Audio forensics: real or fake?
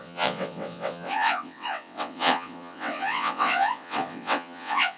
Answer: fake